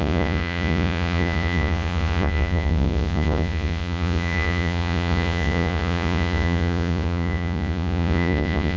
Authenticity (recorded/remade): remade